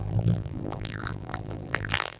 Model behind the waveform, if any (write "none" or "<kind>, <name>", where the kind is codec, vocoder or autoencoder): vocoder, BigVGAN v2